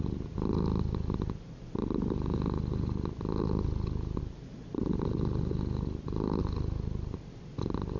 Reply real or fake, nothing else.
real